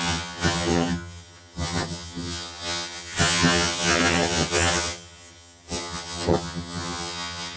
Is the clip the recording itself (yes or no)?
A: no